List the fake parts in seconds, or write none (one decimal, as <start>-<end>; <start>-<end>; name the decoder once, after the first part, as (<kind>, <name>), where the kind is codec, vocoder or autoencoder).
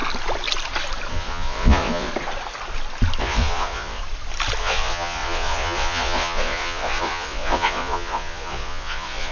1.1-2.1 (vocoder, Vocos); 3.2-4.0; 4.6-9.3